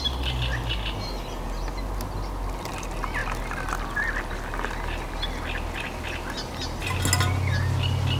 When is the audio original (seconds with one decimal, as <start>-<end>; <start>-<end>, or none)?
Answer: 0.0-8.2